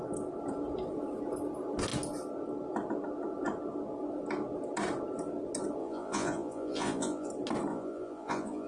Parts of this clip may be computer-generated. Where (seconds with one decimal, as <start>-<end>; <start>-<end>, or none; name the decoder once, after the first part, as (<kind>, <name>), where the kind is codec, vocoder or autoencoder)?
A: 5.8-7.3 (vocoder, Vocos); 7.7-8.7